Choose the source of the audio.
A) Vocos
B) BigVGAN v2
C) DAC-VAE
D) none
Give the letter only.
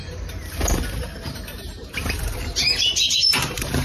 B